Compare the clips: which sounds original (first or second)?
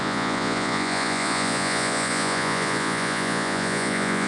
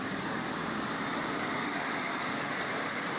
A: second